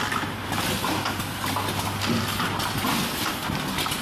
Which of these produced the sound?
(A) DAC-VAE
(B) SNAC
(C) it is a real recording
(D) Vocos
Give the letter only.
C